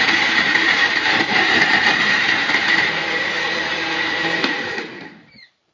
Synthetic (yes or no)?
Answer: yes